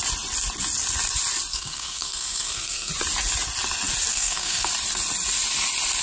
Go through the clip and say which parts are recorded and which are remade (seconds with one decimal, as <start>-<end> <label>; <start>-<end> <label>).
0.0-1.5 recorded; 1.5-2.9 remade; 2.9-4.1 recorded; 4.1-4.7 remade; 4.7-6.0 recorded